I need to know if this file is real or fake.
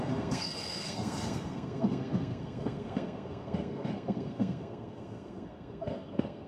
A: fake